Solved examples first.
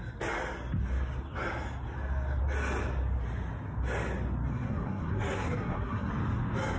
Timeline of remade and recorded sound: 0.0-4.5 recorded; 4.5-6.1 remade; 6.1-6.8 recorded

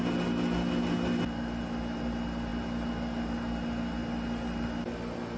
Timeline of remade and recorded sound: 0.0-5.4 recorded

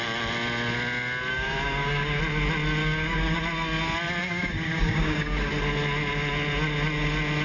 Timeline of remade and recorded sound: 0.0-1.3 recorded; 1.3-2.2 remade; 2.2-2.8 recorded; 2.8-3.4 remade; 3.4-4.2 recorded; 4.2-5.5 remade; 5.5-7.4 recorded

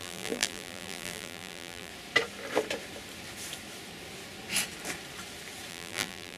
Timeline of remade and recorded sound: 0.0-1.9 remade; 1.9-5.7 recorded; 5.7-6.4 remade

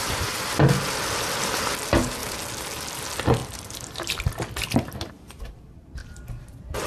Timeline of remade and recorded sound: 0.0-6.0 recorded; 6.0-6.9 remade

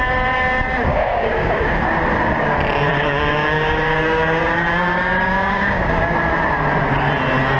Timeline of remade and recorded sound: 0.0-0.9 recorded; 0.9-1.8 remade; 1.8-2.9 recorded; 2.9-5.9 remade; 5.9-7.6 recorded

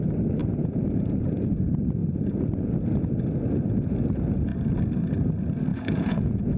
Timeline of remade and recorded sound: 0.0-0.4 recorded; 0.4-1.5 remade; 1.5-5.7 recorded; 5.7-6.6 remade